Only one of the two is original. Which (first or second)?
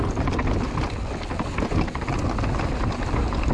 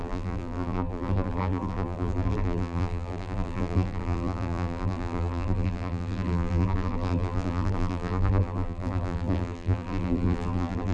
first